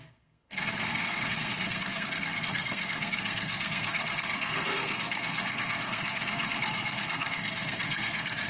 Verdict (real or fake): fake